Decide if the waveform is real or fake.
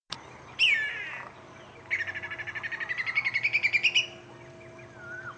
real